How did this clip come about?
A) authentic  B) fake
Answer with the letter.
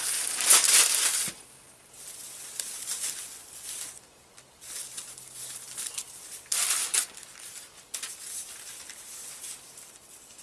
A